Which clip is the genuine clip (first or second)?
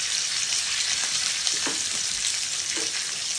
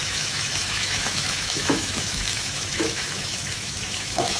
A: first